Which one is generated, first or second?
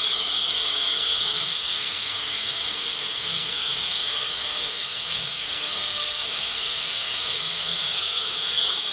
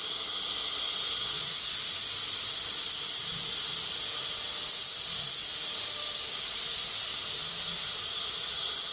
first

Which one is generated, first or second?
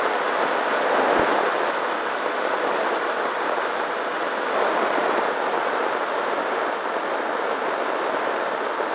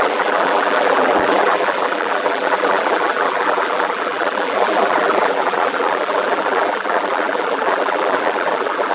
second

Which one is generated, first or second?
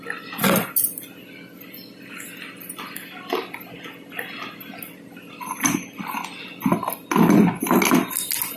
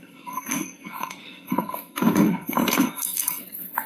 second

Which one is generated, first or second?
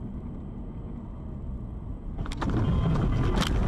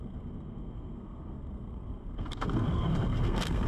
second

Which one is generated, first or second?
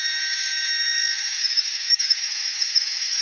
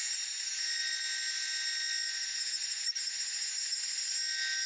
first